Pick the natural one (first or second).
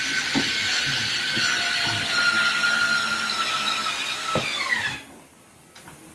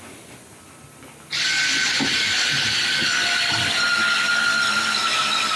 first